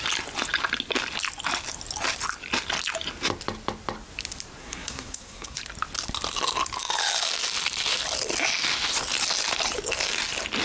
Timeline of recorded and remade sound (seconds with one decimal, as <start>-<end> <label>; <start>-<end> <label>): 0.0-4.6 recorded; 4.6-5.6 remade; 5.6-10.6 recorded